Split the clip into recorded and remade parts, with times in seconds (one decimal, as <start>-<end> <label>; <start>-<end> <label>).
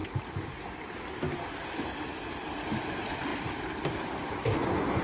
0.0-5.0 recorded